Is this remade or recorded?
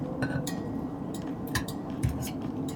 remade